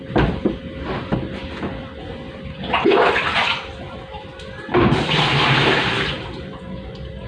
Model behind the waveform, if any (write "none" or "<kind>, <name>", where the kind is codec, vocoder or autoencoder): none